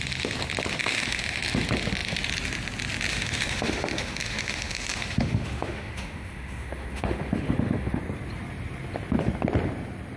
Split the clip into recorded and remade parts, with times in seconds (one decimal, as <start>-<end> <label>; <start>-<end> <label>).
0.0-0.8 recorded; 0.8-1.4 remade; 1.4-3.1 recorded; 3.1-8.0 remade; 8.0-10.2 recorded